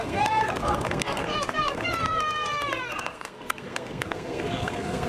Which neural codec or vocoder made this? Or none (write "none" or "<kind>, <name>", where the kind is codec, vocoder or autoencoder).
codec, SNAC